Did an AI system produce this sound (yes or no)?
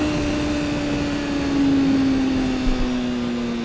no